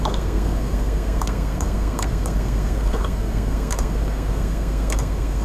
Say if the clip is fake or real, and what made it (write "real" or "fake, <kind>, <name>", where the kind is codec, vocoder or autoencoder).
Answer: fake, codec, SNAC